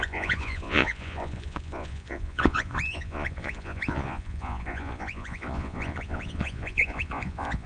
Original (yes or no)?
no